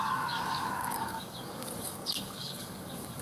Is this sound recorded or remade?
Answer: remade